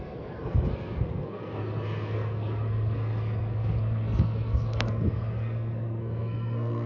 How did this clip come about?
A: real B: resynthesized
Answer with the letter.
B